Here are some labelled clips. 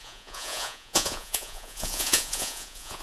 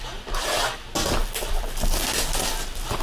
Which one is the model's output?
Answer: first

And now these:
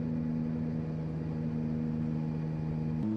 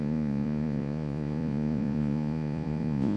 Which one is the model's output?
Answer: second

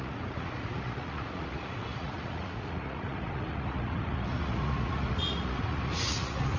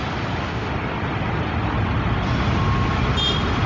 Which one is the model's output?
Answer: first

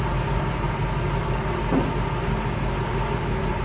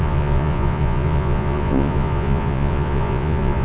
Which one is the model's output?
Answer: second